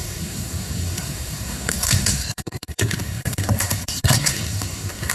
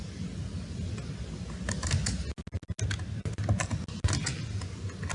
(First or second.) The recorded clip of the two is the second